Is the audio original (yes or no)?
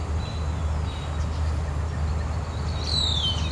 yes